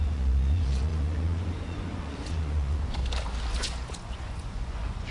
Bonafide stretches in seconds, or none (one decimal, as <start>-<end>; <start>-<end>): 3.0-3.6